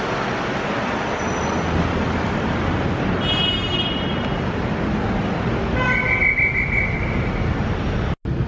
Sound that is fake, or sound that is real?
real